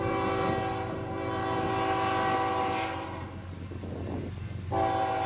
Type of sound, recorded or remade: recorded